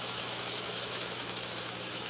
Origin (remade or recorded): remade